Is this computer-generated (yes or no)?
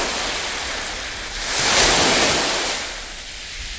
no